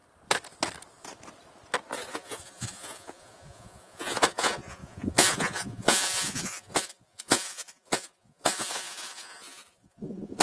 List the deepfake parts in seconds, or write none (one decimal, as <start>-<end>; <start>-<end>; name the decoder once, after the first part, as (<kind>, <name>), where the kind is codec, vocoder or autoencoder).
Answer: 2.1-10.4 (vocoder, Vocos)